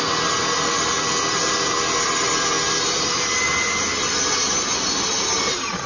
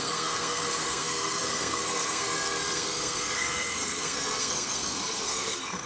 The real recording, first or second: first